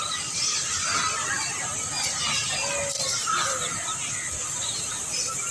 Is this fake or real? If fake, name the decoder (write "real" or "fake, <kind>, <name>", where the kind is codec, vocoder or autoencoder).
real